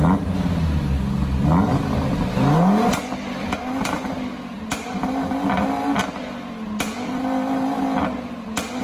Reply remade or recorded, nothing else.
recorded